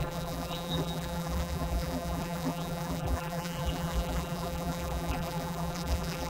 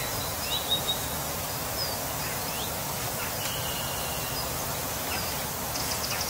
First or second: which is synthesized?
first